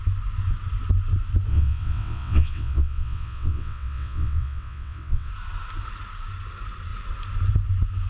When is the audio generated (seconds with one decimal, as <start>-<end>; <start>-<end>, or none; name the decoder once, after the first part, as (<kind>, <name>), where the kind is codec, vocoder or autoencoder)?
1.5-5.3 (vocoder, WaveNeXt)